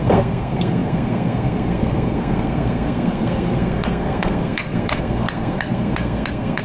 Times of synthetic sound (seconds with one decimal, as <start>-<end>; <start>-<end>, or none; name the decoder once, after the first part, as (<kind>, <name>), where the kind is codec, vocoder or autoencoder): 0.0-6.6 (codec, SNAC)